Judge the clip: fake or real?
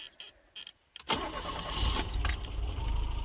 real